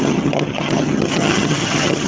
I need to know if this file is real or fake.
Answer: fake